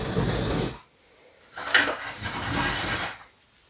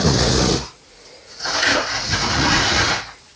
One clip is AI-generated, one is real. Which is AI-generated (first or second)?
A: second